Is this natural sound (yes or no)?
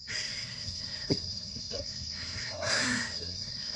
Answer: no